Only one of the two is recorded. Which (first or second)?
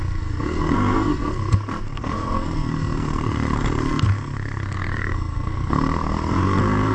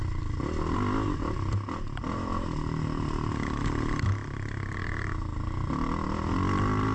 second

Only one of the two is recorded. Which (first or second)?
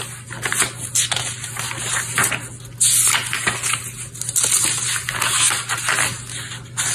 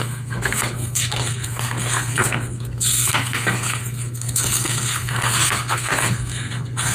first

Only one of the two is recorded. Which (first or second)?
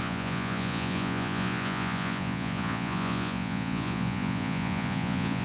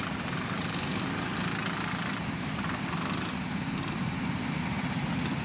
second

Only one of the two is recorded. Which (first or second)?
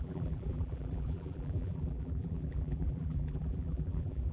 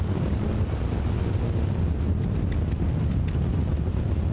second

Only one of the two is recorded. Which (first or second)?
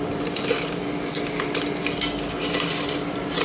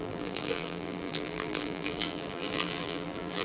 first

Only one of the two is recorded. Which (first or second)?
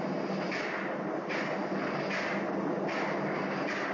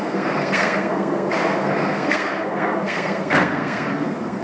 first